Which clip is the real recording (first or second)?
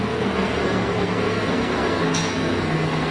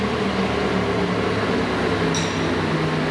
second